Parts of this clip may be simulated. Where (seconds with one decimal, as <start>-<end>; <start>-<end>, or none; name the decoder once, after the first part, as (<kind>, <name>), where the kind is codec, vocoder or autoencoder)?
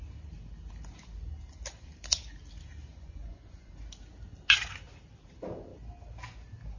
2.9-3.7 (vocoder, Vocos)